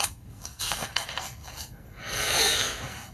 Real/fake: fake